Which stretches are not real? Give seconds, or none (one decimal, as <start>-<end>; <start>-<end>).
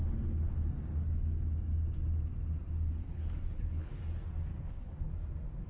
3.0-4.0; 4.5-5.1